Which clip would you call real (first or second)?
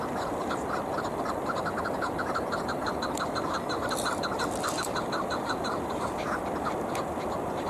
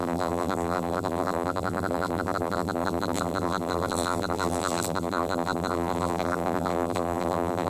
first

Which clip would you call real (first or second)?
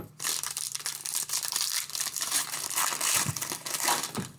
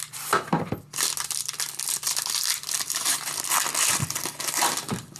second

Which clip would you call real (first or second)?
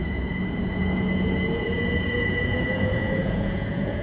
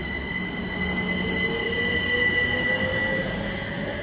second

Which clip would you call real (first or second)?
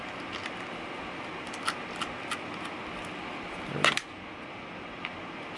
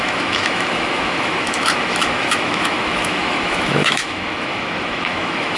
first